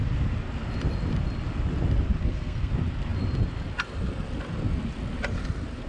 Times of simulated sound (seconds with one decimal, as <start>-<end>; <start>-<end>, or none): 2.2-2.7